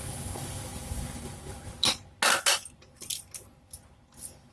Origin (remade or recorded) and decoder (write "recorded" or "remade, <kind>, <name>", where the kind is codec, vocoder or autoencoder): recorded